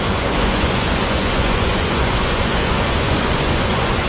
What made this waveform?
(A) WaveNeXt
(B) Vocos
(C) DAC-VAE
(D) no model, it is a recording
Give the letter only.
B